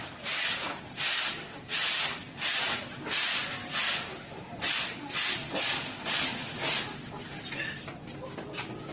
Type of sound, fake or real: real